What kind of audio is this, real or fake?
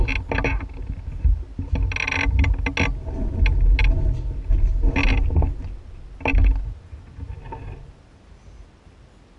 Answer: real